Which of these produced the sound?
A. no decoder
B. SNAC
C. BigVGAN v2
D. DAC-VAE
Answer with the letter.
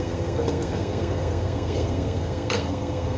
B